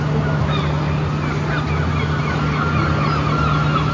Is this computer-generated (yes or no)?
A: no